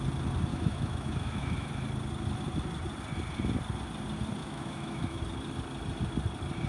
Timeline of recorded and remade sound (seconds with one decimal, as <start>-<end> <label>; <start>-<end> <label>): 0.0-0.5 recorded; 0.5-1.7 remade; 1.7-4.4 recorded; 4.4-5.2 remade; 5.2-6.7 recorded